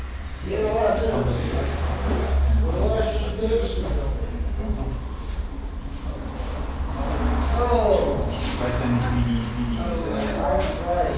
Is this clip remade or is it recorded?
recorded